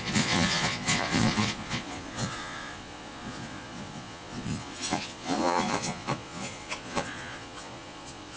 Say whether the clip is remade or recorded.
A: remade